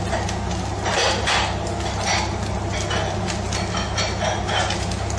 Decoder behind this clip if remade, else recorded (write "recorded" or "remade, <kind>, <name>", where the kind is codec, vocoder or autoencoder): recorded